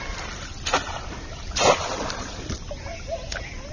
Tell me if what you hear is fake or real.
real